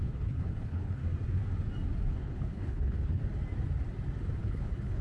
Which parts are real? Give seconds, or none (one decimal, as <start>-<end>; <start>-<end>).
1.0-2.1; 3.2-4.4